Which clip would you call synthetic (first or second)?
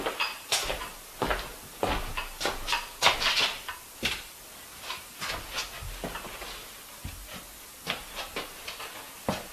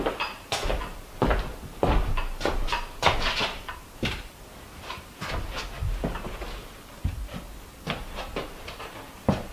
second